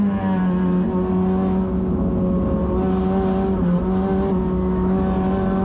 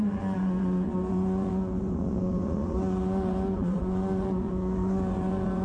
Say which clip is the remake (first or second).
second